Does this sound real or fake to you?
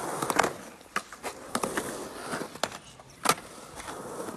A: real